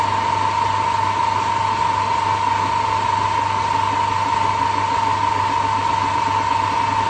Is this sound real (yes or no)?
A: yes